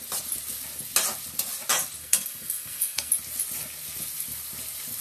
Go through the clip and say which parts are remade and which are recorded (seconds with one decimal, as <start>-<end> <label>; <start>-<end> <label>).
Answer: 0.0-2.0 recorded; 2.0-3.1 remade; 3.1-5.0 recorded